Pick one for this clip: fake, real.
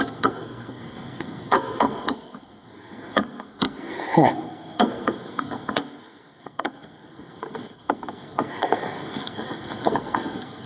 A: fake